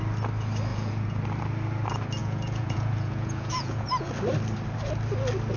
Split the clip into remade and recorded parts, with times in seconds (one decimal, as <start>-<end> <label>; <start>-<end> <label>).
0.0-0.7 recorded; 0.7-1.2 remade; 1.2-2.2 recorded; 2.2-4.1 remade; 4.1-5.6 recorded